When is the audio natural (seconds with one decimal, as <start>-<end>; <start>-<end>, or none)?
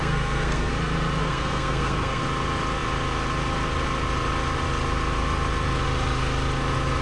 0.7-1.2; 2.2-7.0